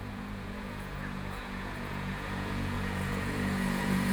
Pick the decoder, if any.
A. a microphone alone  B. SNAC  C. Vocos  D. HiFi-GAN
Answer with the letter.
C